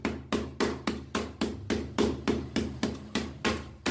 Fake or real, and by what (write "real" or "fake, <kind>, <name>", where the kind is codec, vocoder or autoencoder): real